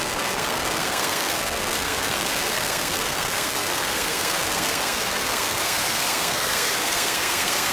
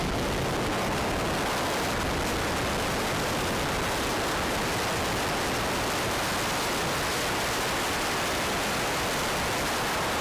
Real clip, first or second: second